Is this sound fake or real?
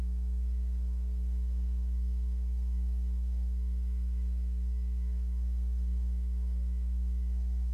fake